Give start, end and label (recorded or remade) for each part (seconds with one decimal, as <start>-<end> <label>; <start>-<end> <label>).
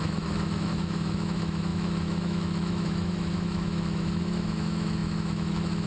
0.0-5.9 remade